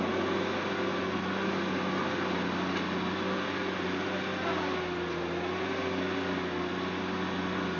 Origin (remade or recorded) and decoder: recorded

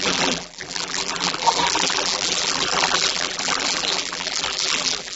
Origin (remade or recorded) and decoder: remade, vocoder, BigVGAN v2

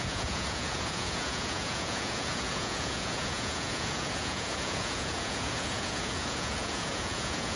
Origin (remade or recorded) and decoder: remade, vocoder, Vocos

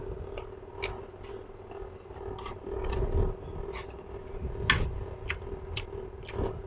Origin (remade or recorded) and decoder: recorded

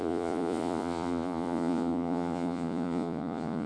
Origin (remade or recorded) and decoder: remade, vocoder, Vocos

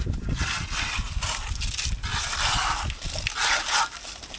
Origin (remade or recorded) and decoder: recorded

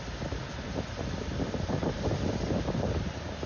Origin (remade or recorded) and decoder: recorded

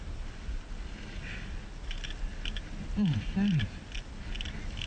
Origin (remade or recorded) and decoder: recorded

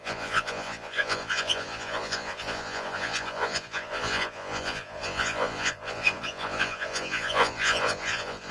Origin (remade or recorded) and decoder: remade, vocoder, Vocos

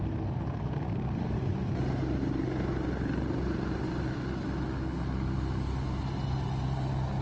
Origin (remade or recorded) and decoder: recorded